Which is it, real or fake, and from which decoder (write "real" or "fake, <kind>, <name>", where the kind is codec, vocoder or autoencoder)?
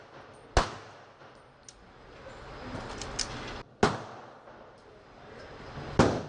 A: real